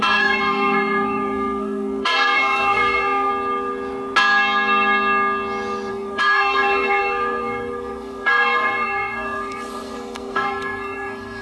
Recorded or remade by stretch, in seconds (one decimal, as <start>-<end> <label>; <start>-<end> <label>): 0.0-3.3 remade; 3.3-5.9 recorded; 5.9-11.4 remade